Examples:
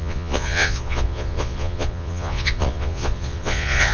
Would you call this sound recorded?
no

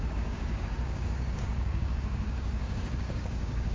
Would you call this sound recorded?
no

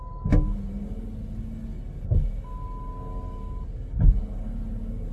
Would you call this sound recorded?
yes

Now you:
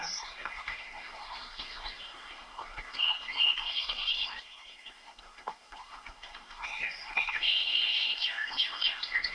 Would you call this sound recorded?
no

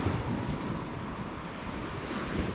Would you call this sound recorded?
yes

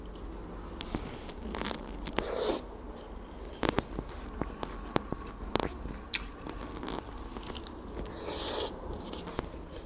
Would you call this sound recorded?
yes